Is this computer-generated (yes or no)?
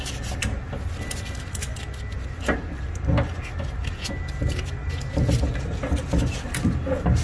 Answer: no